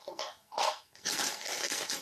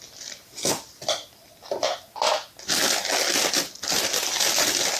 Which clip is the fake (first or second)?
first